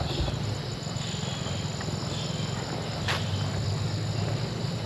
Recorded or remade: recorded